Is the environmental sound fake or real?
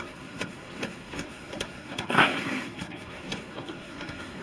fake